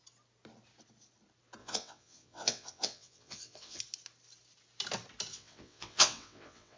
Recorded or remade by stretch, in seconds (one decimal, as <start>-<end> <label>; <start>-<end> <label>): 0.0-1.6 recorded; 1.6-3.8 remade; 3.8-5.3 recorded; 5.3-6.8 remade